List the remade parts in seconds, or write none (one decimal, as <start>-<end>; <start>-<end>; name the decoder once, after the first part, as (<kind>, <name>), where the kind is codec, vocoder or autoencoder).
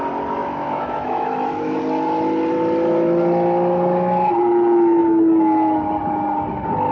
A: 0.4-1.8 (autoencoder, DAC-VAE)